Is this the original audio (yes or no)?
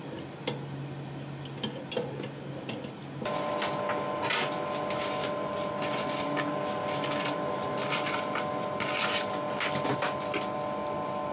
yes